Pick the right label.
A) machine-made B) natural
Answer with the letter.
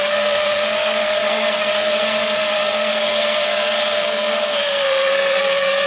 A